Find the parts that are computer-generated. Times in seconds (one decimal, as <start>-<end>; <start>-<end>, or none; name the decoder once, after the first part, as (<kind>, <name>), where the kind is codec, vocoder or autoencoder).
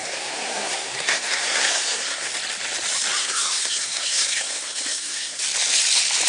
0.0-2.3 (codec, SNAC); 3.2-5.4